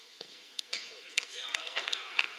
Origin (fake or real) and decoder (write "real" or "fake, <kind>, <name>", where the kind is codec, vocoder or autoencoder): fake, codec, SNAC